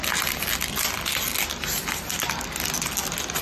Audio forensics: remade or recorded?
recorded